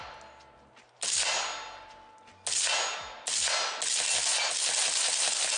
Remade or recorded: recorded